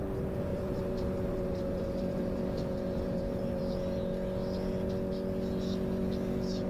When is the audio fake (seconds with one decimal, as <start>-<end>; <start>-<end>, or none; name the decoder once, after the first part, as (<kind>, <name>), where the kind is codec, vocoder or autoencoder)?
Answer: 0.5-3.6 (vocoder, BigVGAN v2)